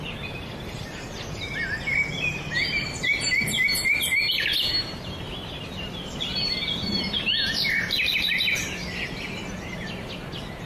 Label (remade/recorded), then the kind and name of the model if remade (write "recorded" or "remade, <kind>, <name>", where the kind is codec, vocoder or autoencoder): recorded